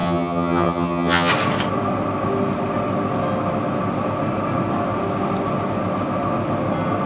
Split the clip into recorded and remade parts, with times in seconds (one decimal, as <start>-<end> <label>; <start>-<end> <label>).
0.0-1.3 remade; 1.3-7.1 recorded